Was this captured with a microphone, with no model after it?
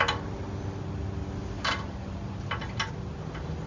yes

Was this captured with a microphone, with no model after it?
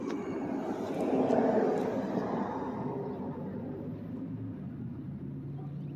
yes